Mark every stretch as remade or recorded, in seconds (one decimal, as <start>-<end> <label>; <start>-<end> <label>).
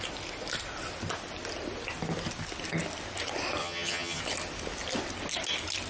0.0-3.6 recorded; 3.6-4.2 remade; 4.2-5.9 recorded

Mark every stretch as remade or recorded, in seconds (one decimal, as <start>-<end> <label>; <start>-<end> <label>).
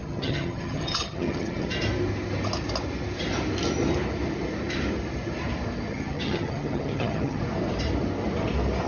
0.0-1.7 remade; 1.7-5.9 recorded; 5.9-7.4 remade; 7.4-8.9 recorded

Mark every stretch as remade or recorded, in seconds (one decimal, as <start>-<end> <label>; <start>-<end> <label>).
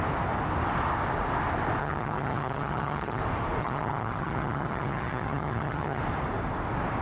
0.0-1.8 recorded; 1.8-3.2 remade; 3.2-3.6 recorded; 3.6-6.0 remade; 6.0-7.0 recorded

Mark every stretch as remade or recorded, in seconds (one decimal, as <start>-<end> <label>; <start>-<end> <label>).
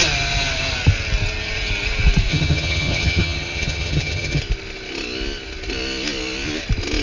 0.0-2.3 recorded; 2.3-4.4 remade; 4.4-7.0 recorded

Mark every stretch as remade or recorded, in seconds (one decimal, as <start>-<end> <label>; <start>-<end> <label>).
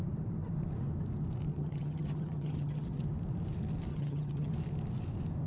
0.0-1.5 recorded; 1.5-3.0 remade; 3.0-3.9 recorded; 3.9-4.5 remade; 4.5-5.5 recorded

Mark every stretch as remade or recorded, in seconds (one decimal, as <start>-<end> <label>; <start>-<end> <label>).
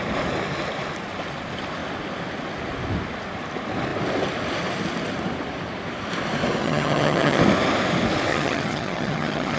0.0-6.6 recorded; 6.6-7.4 remade; 7.4-8.3 recorded; 8.3-9.6 remade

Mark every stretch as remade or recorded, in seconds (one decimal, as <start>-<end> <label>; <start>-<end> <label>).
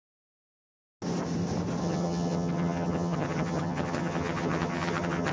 0.0-1.8 recorded; 1.8-5.3 remade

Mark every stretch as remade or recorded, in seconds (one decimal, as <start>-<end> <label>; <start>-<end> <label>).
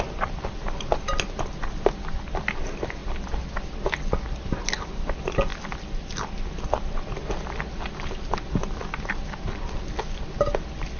0.0-11.0 recorded